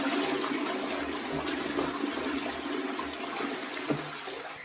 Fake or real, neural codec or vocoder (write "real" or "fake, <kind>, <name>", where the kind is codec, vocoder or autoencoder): real